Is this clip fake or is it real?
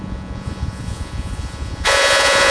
fake